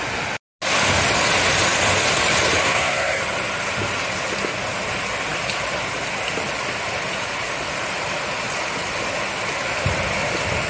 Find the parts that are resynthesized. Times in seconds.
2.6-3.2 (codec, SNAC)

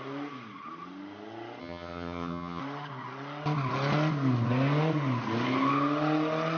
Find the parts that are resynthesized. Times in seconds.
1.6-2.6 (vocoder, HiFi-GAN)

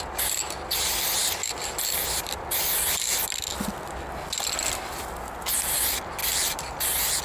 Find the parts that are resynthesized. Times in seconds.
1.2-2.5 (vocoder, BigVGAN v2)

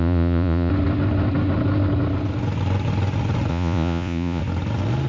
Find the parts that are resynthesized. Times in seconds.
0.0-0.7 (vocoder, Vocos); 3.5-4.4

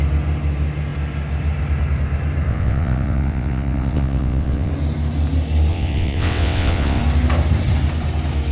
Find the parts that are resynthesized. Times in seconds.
2.5-4.7 (vocoder, WaveNeXt); 5.7-7.0

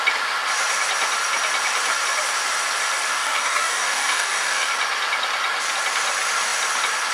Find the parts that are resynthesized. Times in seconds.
3.1-4.7 (codec, DAC)

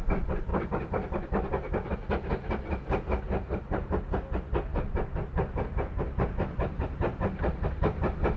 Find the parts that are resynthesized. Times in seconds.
none